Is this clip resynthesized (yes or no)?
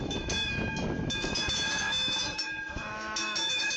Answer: yes